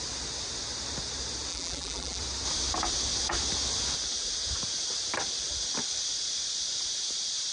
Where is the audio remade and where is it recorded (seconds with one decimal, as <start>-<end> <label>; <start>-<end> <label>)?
0.0-1.5 recorded; 1.5-2.2 remade; 2.2-7.5 recorded